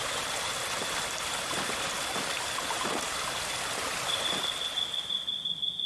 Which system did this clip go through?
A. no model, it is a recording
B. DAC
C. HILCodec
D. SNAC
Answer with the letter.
A